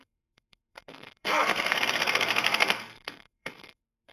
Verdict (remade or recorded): remade